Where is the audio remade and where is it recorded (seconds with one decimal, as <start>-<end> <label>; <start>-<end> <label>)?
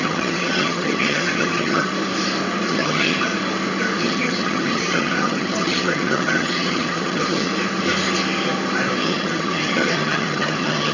0.0-1.9 remade; 1.9-2.7 recorded; 2.7-3.3 remade; 3.3-4.0 recorded; 4.0-7.5 remade; 7.5-9.0 recorded; 9.0-10.9 remade